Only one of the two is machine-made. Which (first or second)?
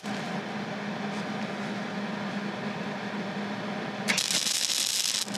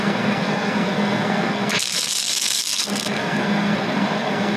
second